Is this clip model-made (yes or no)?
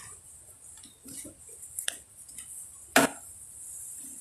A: yes